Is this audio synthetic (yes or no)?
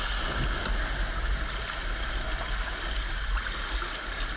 no